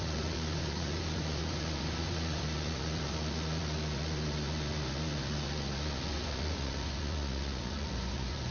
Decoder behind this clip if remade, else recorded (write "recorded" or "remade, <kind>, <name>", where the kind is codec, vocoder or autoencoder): remade, vocoder, Vocos